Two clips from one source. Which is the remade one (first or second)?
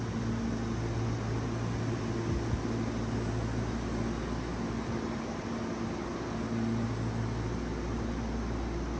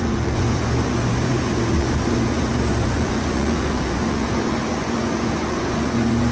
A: second